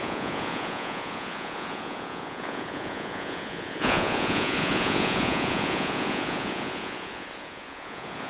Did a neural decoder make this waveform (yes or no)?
yes